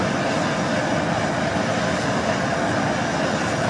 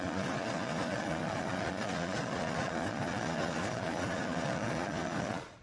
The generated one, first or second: second